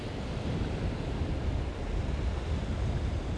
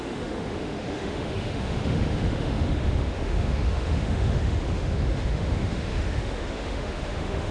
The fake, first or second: second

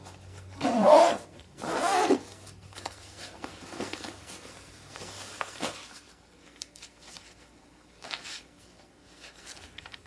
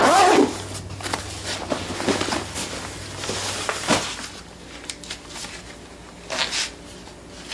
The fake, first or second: first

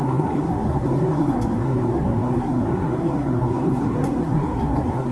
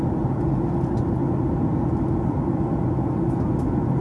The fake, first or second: first